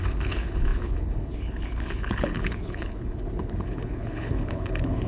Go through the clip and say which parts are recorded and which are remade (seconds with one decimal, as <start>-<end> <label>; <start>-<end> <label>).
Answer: 0.0-5.1 remade